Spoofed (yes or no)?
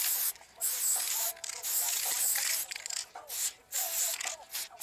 no